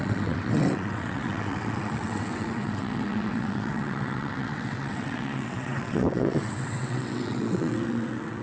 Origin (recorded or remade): remade